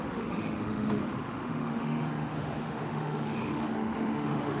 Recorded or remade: remade